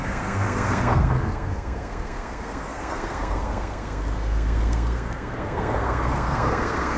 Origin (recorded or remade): remade